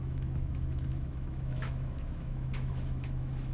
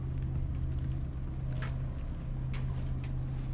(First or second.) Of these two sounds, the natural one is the second